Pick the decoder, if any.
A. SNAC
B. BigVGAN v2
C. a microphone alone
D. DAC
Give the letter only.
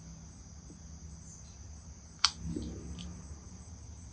C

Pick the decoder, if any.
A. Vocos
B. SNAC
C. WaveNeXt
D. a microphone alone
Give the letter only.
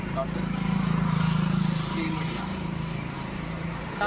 D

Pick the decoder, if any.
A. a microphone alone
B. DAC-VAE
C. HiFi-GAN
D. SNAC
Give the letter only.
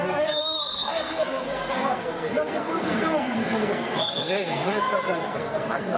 D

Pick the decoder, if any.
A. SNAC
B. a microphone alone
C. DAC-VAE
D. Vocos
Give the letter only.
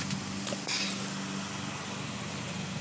B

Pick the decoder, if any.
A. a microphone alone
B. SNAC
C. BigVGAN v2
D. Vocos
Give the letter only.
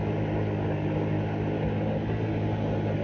A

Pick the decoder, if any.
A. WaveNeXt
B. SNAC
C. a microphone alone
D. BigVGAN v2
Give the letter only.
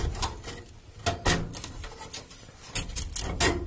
C